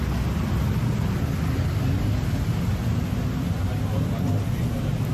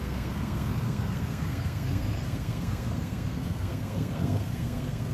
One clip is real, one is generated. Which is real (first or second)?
first